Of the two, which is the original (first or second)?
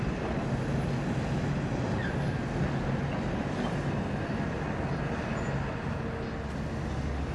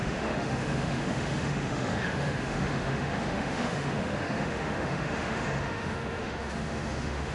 first